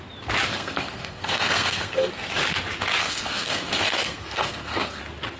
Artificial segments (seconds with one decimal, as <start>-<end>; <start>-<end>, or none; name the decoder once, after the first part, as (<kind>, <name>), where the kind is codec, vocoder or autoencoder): 0.5-2.1 (codec, SNAC); 3.0-5.0

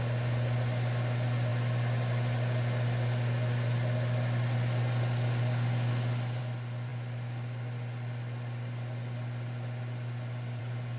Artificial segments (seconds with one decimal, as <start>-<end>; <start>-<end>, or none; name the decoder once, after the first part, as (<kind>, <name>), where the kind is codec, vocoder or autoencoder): none

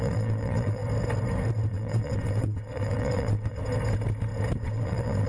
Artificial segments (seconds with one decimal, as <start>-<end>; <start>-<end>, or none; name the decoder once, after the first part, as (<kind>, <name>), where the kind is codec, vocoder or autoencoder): 0.0-0.8 (vocoder, WaveNeXt); 1.7-3.6; 4.6-5.3

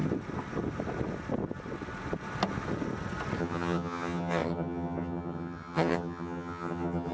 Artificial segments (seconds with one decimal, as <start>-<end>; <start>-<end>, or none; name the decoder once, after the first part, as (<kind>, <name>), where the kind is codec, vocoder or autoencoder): 3.4-7.1 (vocoder, HiFi-GAN)

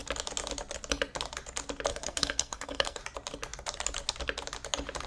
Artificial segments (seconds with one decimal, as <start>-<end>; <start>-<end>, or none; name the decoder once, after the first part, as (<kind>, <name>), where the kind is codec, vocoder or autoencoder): 1.9-3.0 (codec, SNAC)

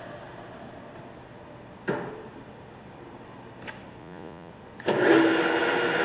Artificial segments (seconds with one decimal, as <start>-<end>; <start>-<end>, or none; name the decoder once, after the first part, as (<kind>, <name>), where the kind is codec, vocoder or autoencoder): 4.0-4.5 (vocoder, Vocos)